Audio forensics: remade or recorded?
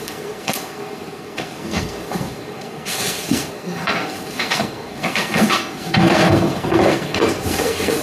remade